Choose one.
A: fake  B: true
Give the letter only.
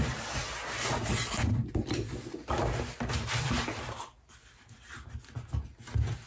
B